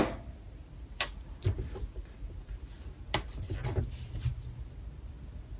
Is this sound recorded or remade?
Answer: recorded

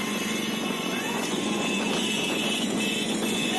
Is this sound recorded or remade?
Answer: remade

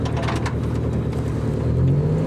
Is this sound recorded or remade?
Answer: recorded